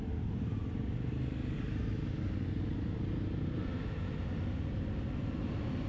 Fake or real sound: real